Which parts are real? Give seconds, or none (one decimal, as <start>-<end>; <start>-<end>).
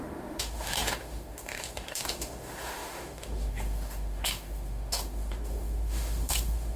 none